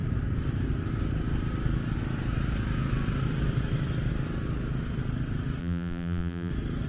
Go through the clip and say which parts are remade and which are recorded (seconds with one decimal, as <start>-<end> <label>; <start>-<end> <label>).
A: 0.0-5.6 recorded; 5.6-6.5 remade; 6.5-6.9 recorded